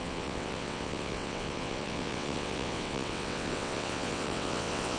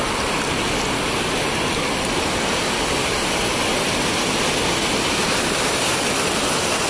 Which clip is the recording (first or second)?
second